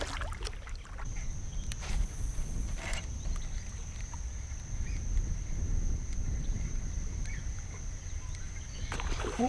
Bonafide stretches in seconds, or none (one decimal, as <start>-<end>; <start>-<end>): 0.0-6.4; 8.1-9.5